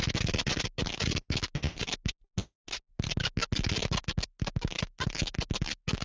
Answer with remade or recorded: recorded